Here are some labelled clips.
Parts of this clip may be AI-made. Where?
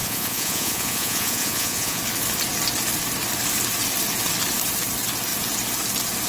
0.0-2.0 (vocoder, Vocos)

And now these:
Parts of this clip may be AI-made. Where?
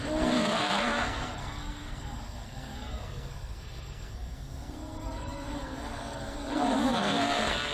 0.0-7.7 (codec, SNAC)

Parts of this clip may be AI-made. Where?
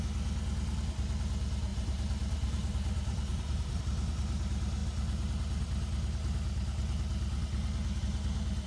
1.7-3.8 (vocoder, BigVGAN v2)